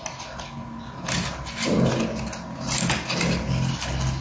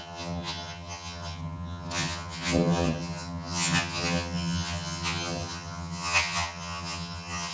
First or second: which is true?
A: first